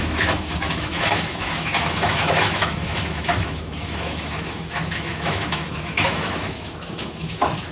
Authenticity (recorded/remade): remade